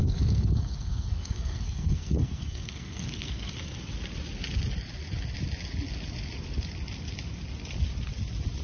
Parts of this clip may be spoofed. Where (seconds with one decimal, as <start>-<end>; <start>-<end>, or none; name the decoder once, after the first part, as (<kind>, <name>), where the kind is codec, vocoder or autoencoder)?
0.0-3.5 (codec, SNAC)